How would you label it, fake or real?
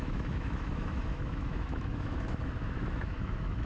fake